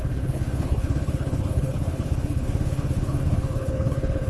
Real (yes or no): no